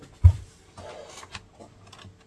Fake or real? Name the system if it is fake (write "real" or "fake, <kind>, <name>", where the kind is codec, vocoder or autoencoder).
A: real